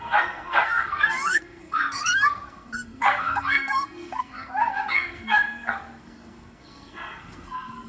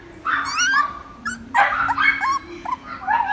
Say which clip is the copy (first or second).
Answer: first